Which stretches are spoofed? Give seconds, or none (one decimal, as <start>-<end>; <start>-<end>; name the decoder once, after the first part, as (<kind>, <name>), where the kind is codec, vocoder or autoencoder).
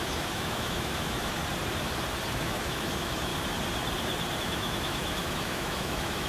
0.0-1.4 (autoencoder, DAC-VAE); 2.3-3.3; 4.4-6.3